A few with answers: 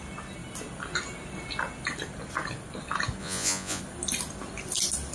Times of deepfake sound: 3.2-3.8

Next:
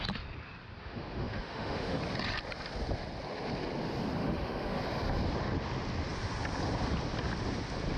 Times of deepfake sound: 0.8-2.0; 4.2-4.8

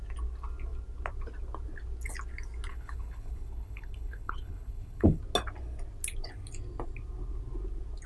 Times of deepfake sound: 2.7-5.2

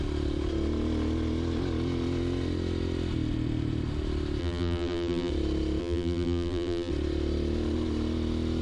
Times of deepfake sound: 4.4-5.3; 5.8-6.9

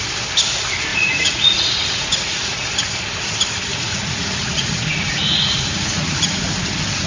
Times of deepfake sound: 0.9-2.7; 3.7-6.4

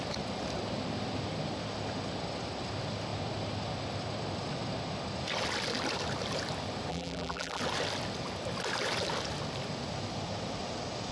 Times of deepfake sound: 6.9-7.6

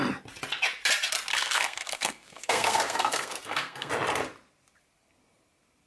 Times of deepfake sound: 1.3-3.9